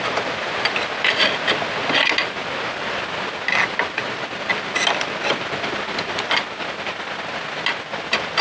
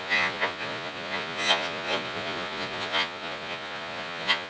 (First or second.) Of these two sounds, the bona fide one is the first